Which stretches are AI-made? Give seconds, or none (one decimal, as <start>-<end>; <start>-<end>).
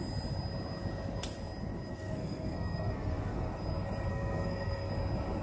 1.9-3.5; 4.1-4.9